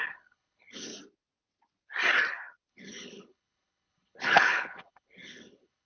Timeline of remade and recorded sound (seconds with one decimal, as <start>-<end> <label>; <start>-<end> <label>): 0.0-0.9 remade; 0.9-2.7 recorded; 2.7-5.9 remade